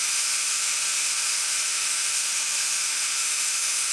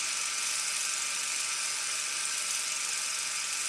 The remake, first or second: first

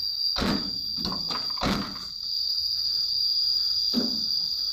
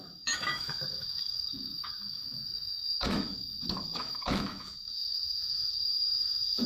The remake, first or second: second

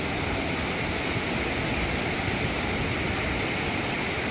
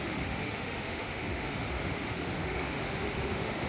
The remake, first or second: second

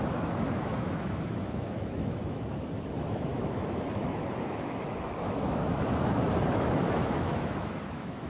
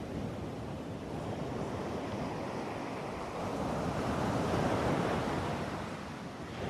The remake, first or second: first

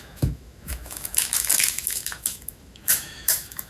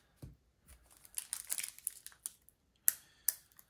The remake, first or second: first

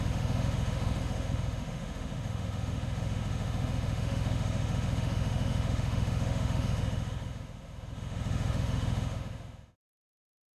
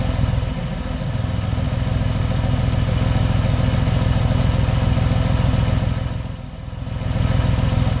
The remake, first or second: first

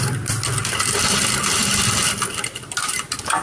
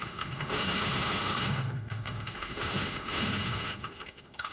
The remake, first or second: second